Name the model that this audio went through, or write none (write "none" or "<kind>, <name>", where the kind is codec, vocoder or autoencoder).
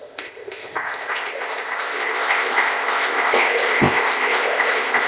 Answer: codec, ZipCodec